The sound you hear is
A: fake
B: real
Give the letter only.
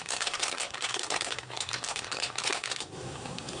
A